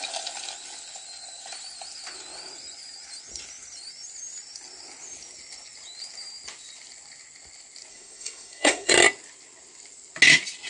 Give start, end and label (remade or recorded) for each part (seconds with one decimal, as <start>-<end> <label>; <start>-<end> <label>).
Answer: 0.0-7.9 recorded; 7.9-8.9 remade; 8.9-10.7 recorded